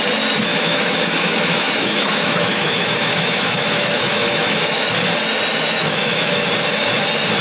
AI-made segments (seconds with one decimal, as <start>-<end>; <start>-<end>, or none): 0.5-4.9; 5.8-6.5